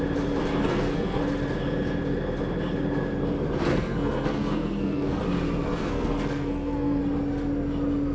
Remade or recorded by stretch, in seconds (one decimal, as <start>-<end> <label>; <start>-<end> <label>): 0.0-0.5 recorded; 0.5-1.2 remade; 1.2-3.7 recorded; 3.7-5.2 remade; 5.2-5.7 recorded; 5.7-7.0 remade; 7.0-8.1 recorded